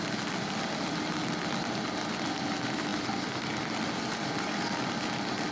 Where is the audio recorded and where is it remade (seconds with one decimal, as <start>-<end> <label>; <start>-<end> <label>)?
0.0-5.5 recorded